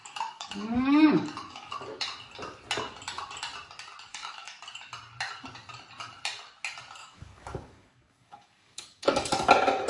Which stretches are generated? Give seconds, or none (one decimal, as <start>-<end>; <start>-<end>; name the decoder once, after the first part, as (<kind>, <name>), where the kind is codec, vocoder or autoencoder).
0.0-1.7 (codec, DAC); 4.1-4.6; 7.0-9.5